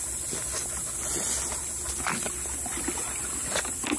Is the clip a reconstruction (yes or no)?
no